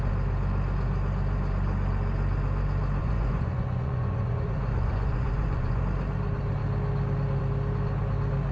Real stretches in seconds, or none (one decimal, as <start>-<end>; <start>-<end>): 0.0-3.0; 5.8-8.5